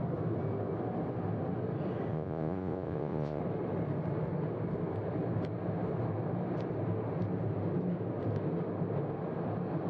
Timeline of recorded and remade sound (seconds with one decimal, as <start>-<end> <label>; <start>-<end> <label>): 0.0-2.1 recorded; 2.1-3.4 remade; 3.4-9.9 recorded